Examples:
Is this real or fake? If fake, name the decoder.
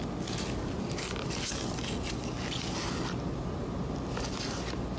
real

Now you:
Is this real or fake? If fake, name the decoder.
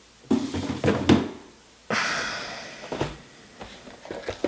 real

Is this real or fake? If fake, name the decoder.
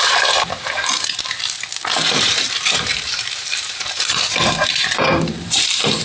fake, vocoder, BigVGAN v2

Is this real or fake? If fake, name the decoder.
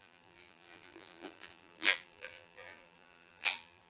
fake, vocoder, BigVGAN v2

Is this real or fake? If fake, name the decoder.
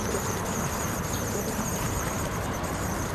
fake, vocoder, BigVGAN v2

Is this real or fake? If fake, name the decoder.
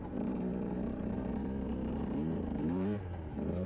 fake, vocoder, BigVGAN v2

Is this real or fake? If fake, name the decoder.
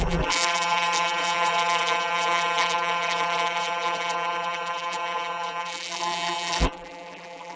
fake, vocoder, BigVGAN v2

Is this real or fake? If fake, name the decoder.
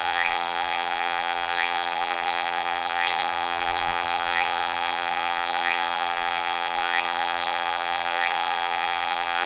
fake, vocoder, BigVGAN v2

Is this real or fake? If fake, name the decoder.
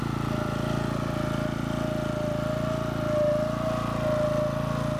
real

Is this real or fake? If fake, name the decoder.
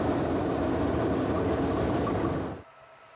fake, vocoder, BigVGAN v2